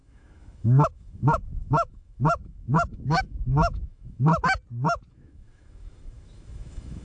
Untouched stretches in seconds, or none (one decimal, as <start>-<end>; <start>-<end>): 4.3-5.1